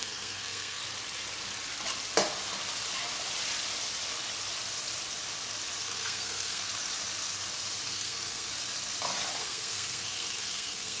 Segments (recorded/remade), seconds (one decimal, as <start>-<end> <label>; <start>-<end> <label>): 0.0-0.8 remade; 0.8-5.8 recorded; 5.8-6.7 remade; 6.7-7.9 recorded; 7.9-8.5 remade; 8.5-9.4 recorded; 9.4-11.0 remade